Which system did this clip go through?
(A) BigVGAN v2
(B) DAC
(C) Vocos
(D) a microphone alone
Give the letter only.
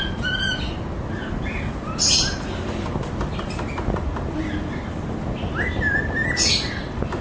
D